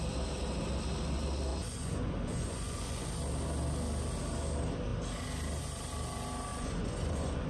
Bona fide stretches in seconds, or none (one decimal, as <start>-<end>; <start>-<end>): 0.0-1.5; 3.1-6.5